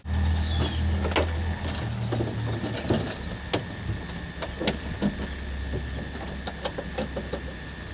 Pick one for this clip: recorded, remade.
recorded